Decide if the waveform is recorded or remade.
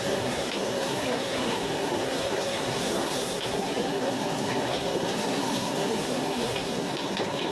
remade